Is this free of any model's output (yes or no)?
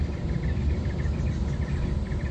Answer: no